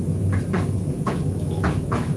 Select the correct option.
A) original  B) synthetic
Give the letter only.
B